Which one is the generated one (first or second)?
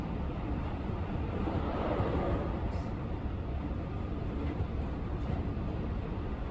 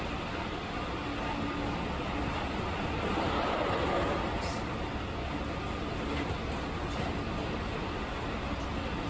first